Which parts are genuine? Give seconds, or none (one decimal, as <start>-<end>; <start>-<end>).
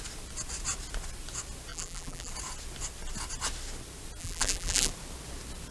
0.0-1.7; 2.3-4.2; 4.9-5.7